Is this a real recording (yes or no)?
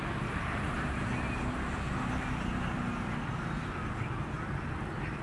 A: yes